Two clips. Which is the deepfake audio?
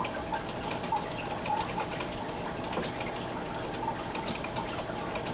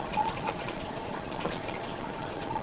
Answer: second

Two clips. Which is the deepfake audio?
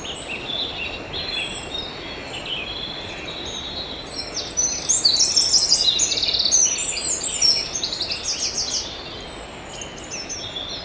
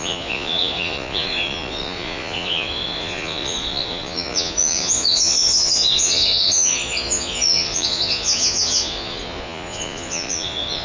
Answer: second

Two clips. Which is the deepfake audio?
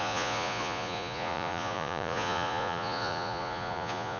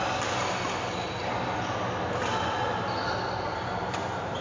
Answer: first